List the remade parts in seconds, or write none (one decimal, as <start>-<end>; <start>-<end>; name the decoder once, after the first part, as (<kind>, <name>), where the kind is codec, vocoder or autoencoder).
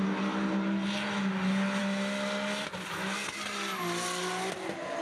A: none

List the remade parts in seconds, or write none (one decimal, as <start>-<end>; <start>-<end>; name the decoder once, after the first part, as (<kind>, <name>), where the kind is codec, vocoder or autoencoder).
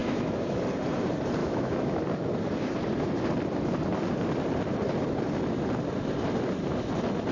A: 0.0-0.6 (autoencoder, DAC-VAE); 1.4-2.0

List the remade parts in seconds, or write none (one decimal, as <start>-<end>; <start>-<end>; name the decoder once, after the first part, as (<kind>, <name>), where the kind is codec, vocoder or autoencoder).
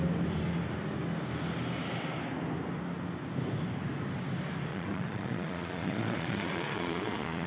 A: 4.7-7.5 (vocoder, Vocos)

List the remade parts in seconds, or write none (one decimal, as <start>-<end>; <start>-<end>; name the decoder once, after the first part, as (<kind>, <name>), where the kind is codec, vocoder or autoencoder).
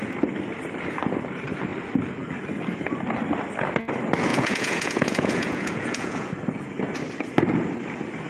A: 4.3-6.3 (vocoder, Vocos)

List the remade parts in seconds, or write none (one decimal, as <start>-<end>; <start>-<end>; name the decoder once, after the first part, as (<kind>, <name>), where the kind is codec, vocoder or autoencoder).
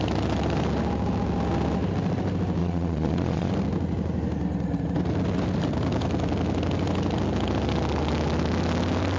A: 2.6-3.5 (vocoder, Vocos)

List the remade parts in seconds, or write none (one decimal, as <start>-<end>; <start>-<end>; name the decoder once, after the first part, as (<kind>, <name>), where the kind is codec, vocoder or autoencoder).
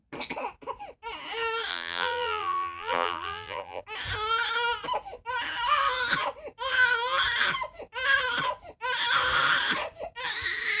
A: 1.7-3.8 (vocoder, BigVGAN v2)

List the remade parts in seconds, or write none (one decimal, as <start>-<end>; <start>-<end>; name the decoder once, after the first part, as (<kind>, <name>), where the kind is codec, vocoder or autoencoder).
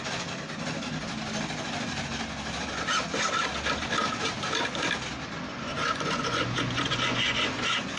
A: 5.5-8.0 (vocoder, Vocos)